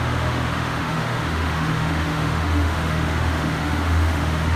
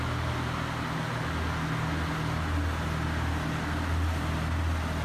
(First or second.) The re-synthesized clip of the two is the first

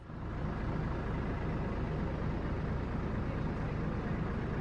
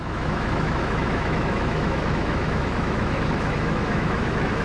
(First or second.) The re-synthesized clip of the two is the second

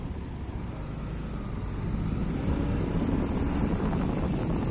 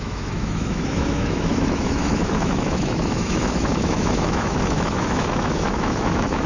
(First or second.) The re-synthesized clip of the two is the second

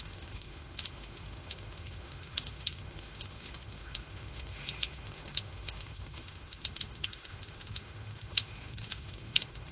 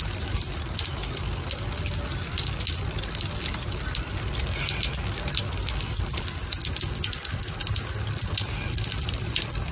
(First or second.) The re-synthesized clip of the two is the first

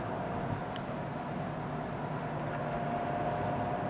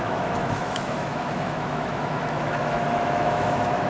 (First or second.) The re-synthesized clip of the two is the second